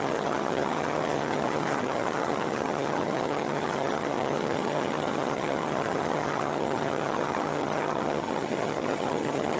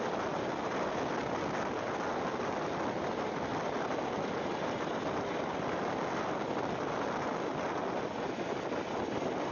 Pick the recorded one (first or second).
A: second